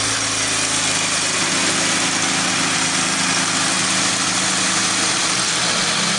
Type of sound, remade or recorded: recorded